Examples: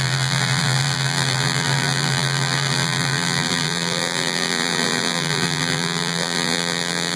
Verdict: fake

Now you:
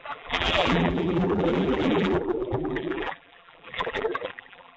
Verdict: fake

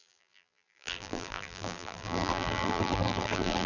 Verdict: fake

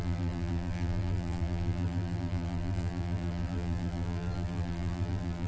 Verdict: fake